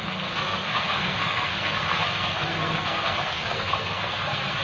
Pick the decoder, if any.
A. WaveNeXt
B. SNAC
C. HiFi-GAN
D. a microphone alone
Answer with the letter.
B